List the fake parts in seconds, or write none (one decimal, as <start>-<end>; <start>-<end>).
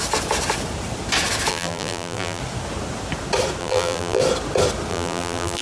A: 1.5-2.4; 3.6-4.2; 4.9-5.6